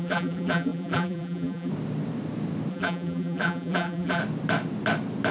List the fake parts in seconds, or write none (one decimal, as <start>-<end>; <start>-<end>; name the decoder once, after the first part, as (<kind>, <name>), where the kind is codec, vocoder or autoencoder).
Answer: 0.0-1.7 (vocoder, BigVGAN v2); 2.7-4.2